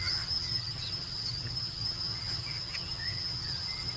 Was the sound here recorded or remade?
remade